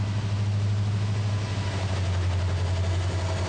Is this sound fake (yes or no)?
no